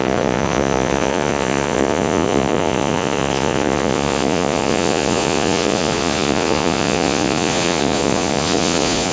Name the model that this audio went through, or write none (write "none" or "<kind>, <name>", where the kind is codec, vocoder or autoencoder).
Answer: vocoder, Vocos